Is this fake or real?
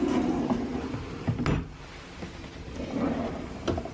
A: real